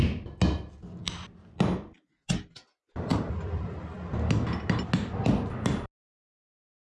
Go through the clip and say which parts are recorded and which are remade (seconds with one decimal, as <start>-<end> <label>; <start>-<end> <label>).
0.0-6.9 recorded